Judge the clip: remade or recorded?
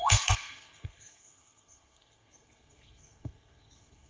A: remade